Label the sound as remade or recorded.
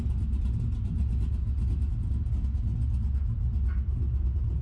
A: recorded